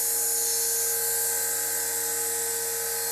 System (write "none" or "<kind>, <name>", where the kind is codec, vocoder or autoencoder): none